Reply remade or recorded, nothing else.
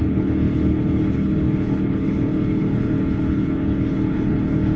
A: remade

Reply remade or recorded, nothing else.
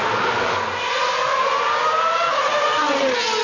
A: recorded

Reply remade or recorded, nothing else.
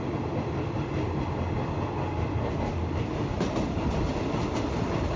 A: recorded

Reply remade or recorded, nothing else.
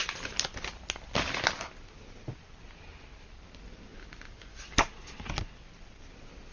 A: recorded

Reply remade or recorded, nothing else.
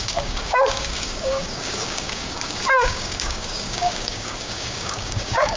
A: remade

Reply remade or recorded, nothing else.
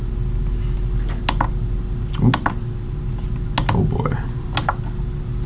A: recorded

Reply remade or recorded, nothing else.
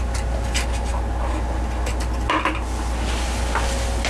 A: recorded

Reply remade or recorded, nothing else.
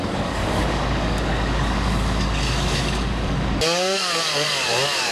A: remade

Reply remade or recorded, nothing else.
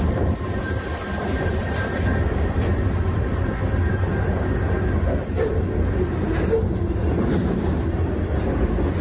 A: remade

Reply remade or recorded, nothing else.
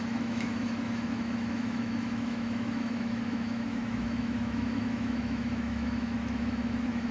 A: remade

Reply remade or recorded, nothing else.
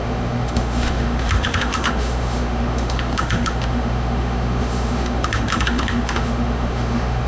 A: remade